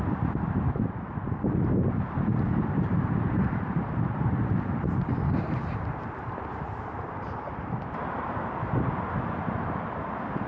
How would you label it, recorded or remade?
remade